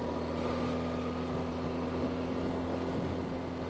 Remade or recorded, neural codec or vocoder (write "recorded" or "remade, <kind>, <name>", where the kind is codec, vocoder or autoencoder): recorded